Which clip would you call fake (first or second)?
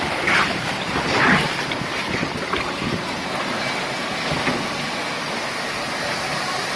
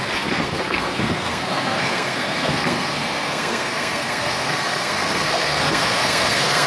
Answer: second